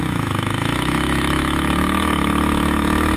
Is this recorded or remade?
remade